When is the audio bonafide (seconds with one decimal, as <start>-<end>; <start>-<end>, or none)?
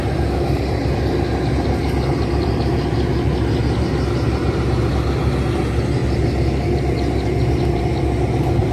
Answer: 0.0-8.7